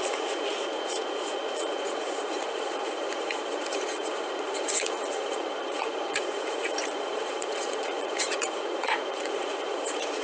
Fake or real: fake